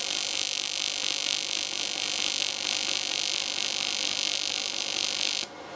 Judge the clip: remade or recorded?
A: recorded